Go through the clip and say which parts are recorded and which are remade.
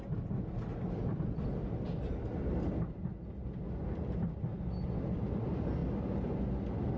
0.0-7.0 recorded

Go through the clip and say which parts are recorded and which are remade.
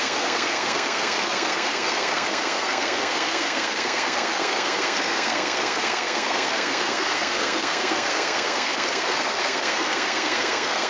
0.0-10.9 remade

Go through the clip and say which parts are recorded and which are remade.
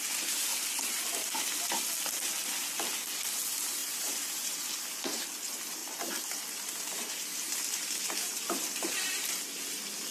0.0-3.8 recorded; 3.8-5.0 remade; 5.0-5.8 recorded; 5.8-9.4 remade; 9.4-10.1 recorded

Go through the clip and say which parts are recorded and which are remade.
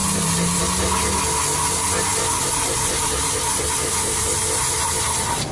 0.0-5.5 recorded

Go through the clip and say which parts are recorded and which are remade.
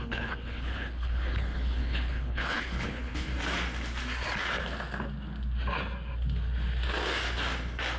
0.0-3.3 remade; 3.3-8.0 recorded